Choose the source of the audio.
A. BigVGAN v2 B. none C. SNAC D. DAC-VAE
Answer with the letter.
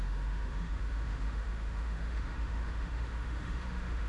D